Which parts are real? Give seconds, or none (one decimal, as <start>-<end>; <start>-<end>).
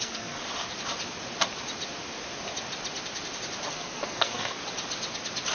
0.4-3.7; 4.6-5.5